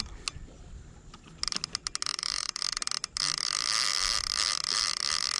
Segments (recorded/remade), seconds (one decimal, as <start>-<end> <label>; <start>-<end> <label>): 0.0-2.1 recorded; 2.1-2.6 remade; 2.6-5.4 recorded